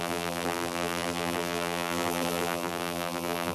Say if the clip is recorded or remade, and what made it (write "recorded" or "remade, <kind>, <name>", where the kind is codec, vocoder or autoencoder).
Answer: remade, vocoder, BigVGAN v2